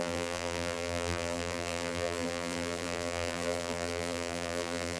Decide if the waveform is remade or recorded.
remade